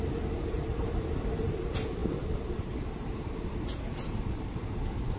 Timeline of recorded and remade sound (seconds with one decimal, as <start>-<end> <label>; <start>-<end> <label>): 0.0-5.2 recorded